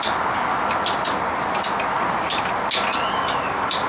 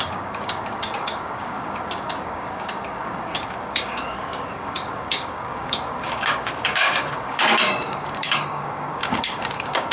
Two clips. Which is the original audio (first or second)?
first